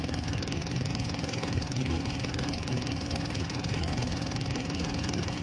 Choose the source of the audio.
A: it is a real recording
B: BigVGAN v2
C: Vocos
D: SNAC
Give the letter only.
D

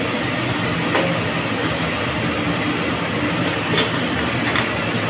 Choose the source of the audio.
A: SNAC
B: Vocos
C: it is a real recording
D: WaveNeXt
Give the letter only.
C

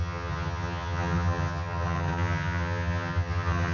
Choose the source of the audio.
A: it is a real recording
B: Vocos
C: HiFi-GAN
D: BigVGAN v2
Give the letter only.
C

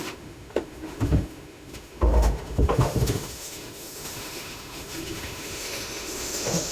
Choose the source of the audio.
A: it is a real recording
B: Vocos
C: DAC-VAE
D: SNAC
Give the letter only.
C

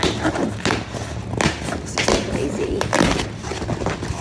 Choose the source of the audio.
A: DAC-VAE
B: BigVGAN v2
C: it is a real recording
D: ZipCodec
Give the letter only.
C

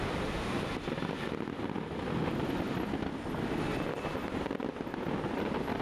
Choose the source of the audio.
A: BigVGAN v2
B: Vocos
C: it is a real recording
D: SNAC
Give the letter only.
C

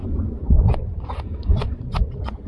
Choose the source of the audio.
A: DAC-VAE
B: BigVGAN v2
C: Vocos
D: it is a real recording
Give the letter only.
C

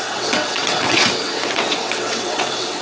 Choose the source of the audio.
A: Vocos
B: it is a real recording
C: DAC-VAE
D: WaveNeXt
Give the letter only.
D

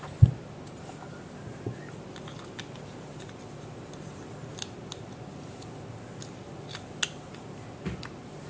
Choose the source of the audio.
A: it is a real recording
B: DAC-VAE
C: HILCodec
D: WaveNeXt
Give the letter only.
A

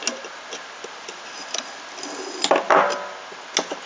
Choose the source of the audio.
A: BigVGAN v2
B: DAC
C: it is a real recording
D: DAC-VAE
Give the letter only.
C